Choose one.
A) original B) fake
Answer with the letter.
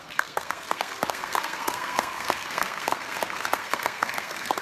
B